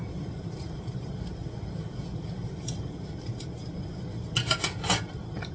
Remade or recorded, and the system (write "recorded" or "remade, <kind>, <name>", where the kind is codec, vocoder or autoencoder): remade, vocoder, BigVGAN v2